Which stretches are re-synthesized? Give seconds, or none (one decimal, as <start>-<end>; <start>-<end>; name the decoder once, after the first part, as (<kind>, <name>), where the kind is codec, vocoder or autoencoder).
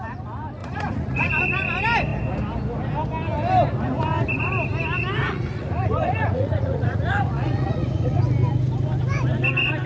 0.6-1.3 (vocoder, Vocos); 5.2-8.2